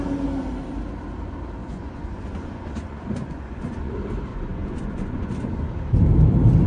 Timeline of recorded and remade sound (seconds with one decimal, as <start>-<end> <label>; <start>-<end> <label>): 0.0-1.6 recorded; 1.6-3.9 remade; 3.9-4.3 recorded; 4.3-5.3 remade; 5.3-6.7 recorded